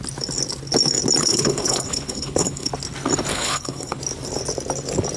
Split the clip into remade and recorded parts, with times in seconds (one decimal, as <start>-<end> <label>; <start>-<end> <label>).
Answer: 0.0-1.2 recorded; 1.2-2.7 remade; 2.7-3.3 recorded; 3.3-4.0 remade; 4.0-5.2 recorded